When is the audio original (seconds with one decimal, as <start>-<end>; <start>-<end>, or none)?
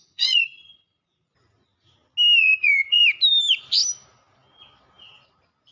1.3-2.4; 3.0-5.7